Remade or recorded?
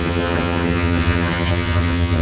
remade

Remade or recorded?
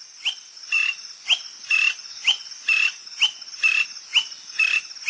recorded